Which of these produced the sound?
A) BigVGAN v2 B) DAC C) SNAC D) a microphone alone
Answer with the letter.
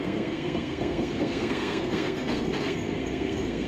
C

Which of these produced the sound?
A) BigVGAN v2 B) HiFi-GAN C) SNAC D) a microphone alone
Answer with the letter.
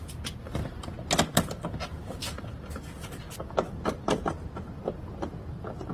D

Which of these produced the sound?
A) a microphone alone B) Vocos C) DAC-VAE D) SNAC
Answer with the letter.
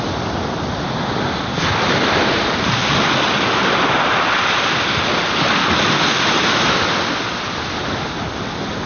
A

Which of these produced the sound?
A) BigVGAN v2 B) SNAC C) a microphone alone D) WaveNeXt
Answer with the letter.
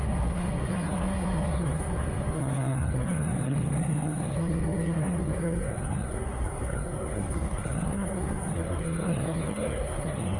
B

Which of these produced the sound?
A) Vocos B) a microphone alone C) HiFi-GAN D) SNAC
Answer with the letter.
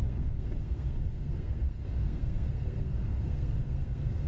D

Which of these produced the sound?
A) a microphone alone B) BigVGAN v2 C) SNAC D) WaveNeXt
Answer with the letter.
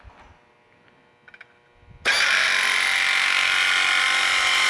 A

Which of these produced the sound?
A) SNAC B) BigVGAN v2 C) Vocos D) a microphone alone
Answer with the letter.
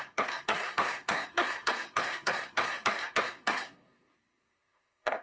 A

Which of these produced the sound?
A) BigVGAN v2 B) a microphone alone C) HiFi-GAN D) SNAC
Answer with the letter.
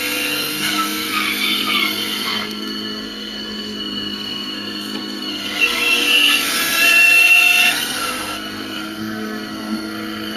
D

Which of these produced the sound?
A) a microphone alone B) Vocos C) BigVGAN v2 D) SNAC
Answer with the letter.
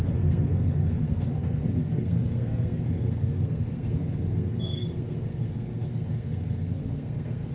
D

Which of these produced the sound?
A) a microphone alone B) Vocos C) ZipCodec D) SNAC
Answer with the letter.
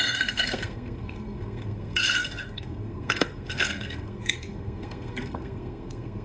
D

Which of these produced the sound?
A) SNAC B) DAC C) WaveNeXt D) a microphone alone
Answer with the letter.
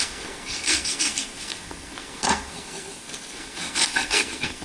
A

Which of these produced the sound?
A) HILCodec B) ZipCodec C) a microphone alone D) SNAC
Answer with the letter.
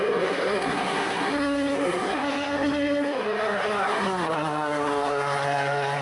D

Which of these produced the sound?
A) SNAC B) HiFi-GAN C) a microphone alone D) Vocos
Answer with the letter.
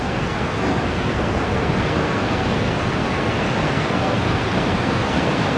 A